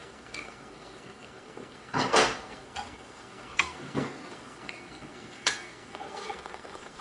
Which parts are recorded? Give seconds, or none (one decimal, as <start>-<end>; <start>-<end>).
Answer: none

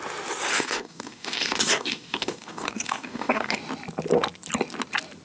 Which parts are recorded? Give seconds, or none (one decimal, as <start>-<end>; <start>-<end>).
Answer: 0.0-0.5; 3.6-5.2

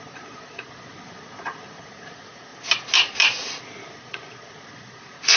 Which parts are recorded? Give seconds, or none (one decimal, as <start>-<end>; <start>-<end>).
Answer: 2.5-3.6